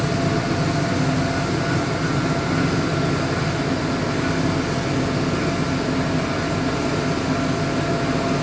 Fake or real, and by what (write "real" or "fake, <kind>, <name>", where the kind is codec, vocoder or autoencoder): real